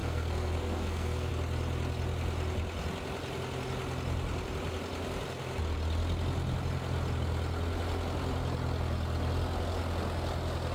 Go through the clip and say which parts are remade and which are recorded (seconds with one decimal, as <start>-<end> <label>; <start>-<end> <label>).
0.0-1.3 remade; 1.3-10.7 recorded